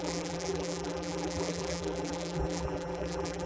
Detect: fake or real fake